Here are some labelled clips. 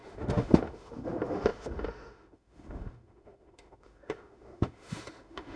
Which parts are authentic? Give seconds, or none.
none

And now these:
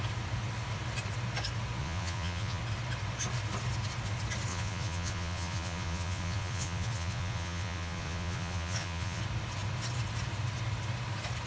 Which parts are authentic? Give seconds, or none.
0.0-1.8; 2.6-4.5; 9.2-11.5

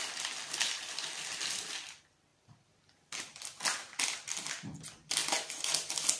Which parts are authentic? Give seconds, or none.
0.0-6.2

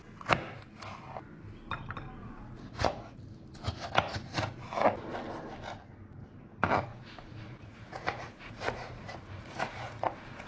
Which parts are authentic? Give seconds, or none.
0.0-2.2; 3.2-6.9; 10.1-10.5

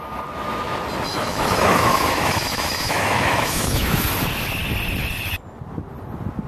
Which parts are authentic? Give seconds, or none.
0.0-1.1; 4.1-6.5

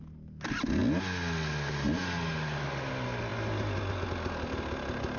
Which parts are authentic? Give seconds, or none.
0.0-5.2

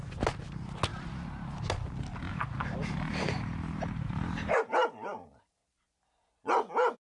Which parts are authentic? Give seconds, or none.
0.0-0.9; 1.6-2.8; 5.6-7.1